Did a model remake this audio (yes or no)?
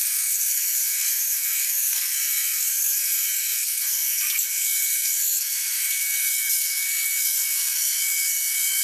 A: yes